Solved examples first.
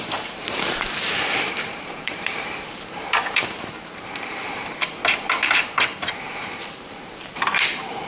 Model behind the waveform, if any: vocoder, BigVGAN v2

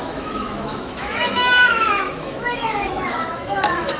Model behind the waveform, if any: autoencoder, DAC-VAE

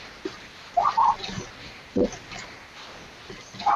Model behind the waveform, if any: none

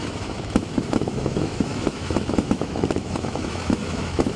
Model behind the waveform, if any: autoencoder, DAC-VAE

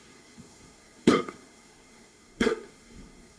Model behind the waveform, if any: codec, SNAC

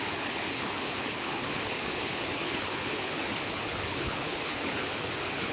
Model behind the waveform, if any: codec, HILCodec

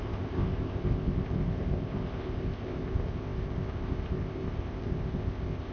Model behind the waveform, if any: codec, ZipCodec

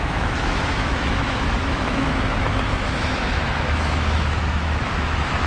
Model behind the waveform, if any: autoencoder, DAC-VAE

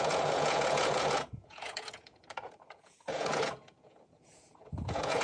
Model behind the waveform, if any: vocoder, Vocos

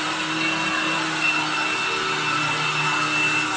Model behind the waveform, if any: none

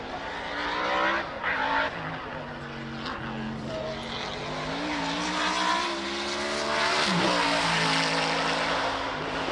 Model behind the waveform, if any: none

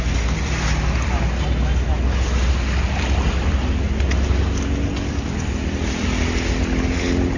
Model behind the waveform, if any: none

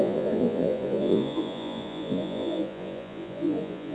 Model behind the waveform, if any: vocoder, Vocos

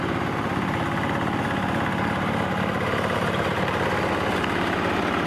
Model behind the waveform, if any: none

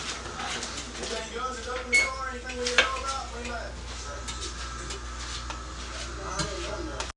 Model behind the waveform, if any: none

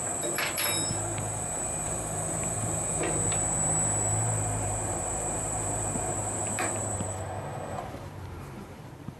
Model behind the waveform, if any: vocoder, BigVGAN v2